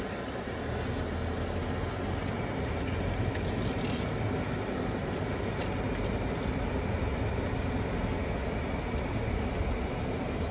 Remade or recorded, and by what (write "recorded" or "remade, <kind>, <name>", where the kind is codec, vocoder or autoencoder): recorded